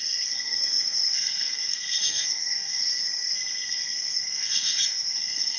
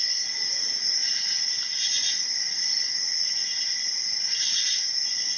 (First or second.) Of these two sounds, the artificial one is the first